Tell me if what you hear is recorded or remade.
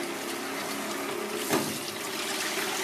recorded